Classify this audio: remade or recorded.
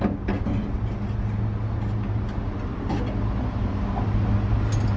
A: recorded